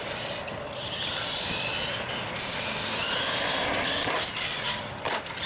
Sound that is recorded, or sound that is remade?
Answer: recorded